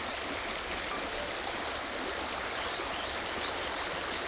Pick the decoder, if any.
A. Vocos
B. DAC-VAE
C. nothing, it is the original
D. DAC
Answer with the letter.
C